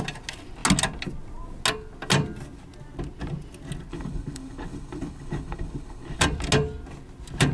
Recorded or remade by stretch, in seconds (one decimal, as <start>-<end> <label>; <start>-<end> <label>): 0.0-3.9 recorded; 3.9-6.2 remade; 6.2-7.5 recorded